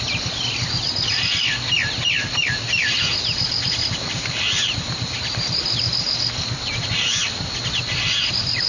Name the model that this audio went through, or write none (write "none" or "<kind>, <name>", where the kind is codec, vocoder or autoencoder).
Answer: vocoder, BigVGAN v2